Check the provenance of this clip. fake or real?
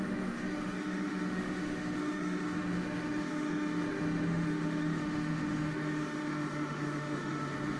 fake